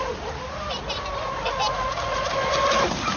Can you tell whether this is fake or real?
real